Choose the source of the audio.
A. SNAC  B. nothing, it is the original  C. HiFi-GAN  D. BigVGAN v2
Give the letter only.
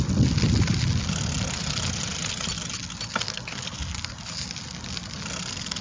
B